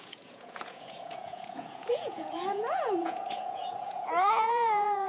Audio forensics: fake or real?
fake